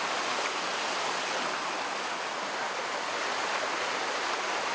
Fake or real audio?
real